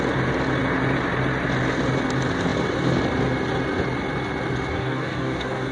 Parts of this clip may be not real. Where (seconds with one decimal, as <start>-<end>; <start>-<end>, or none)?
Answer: 4.7-5.7